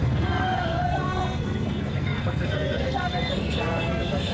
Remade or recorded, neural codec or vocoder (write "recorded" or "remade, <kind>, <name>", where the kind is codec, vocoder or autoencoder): remade, codec, SNAC